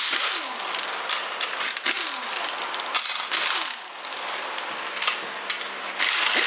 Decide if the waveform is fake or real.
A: real